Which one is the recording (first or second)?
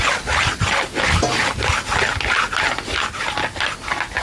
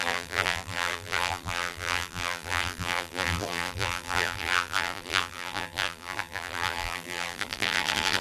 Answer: first